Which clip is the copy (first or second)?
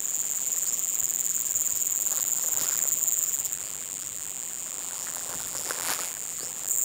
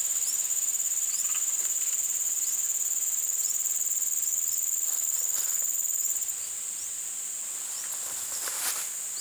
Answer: first